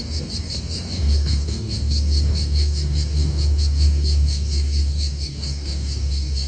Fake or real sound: fake